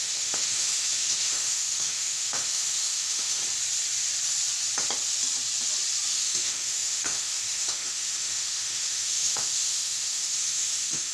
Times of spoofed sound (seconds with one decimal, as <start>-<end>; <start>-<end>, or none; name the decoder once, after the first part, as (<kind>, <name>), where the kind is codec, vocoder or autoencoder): 0.0-3.4 (autoencoder, DAC-VAE); 6.1-11.1